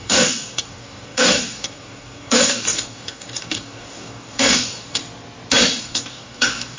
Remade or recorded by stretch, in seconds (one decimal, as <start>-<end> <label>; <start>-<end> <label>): 0.0-5.0 remade; 5.0-5.8 recorded; 5.8-6.8 remade